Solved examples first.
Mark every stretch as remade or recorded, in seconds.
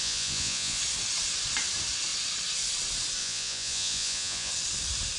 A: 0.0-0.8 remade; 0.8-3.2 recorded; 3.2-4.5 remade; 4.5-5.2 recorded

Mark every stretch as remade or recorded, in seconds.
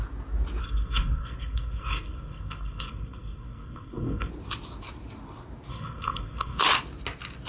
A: 0.0-0.6 recorded; 0.6-4.3 remade; 4.3-5.7 recorded; 5.7-6.6 remade; 6.6-7.5 recorded